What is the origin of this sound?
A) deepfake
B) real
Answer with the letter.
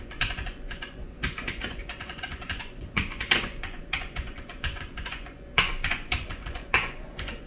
A